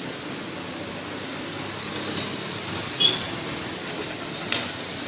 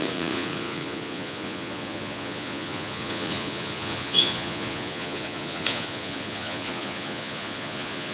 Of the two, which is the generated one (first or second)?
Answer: second